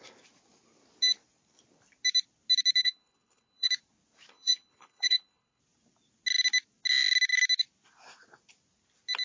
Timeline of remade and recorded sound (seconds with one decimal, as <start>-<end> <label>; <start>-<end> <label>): 0.0-2.8 recorded; 2.8-3.7 remade; 3.7-4.3 recorded; 4.3-5.6 remade; 5.6-9.2 recorded